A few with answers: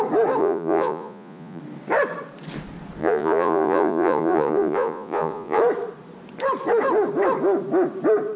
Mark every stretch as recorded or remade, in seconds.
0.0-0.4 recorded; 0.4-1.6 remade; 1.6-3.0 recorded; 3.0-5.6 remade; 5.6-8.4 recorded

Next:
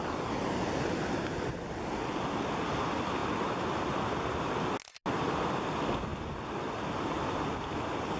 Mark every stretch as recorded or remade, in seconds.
0.0-8.2 recorded

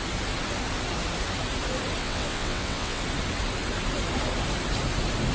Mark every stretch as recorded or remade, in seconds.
0.0-2.0 recorded; 2.0-3.0 remade; 3.0-5.3 recorded

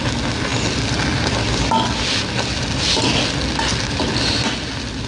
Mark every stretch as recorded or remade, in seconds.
0.0-5.1 recorded

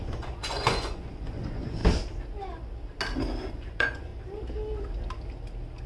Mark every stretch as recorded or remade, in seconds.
0.0-1.8 remade; 1.8-3.5 recorded; 3.5-4.1 remade; 4.1-5.9 recorded

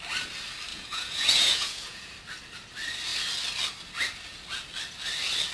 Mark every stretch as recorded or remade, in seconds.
0.0-0.7 recorded; 0.7-2.1 remade; 2.1-5.5 recorded